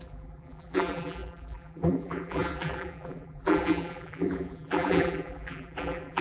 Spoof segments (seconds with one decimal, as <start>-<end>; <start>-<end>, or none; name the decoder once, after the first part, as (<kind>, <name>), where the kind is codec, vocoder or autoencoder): 0.0-6.2 (vocoder, BigVGAN v2)